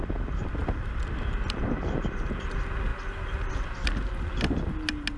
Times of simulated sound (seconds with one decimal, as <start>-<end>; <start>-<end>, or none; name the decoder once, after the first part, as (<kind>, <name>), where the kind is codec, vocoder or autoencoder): 0.6-2.0 (vocoder, BigVGAN v2)